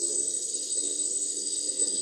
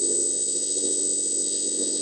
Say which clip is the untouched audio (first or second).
second